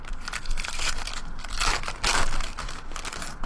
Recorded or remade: recorded